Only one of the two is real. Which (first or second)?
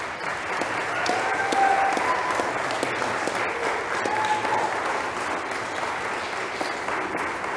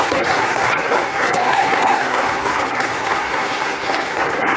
first